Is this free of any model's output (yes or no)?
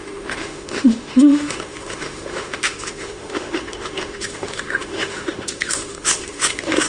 no